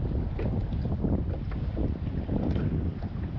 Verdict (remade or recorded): recorded